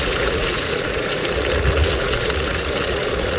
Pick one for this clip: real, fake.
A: fake